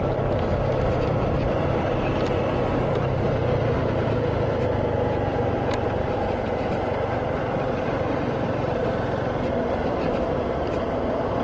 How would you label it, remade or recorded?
remade